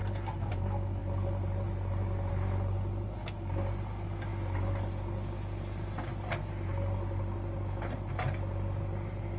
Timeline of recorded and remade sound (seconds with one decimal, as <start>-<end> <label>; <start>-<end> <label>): 0.0-9.4 recorded